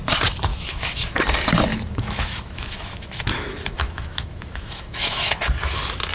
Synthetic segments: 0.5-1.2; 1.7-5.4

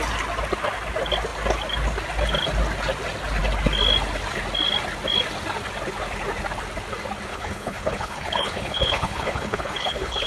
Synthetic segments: 7.3-10.3

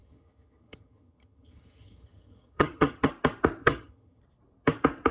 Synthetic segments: 0.0-3.1; 3.6-4.2